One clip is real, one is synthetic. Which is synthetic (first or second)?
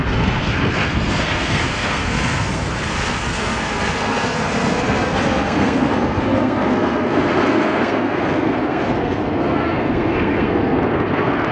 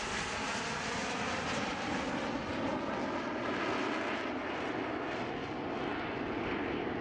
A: first